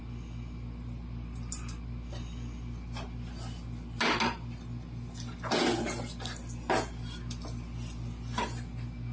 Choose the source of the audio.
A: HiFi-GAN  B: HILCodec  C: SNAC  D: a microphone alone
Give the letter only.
D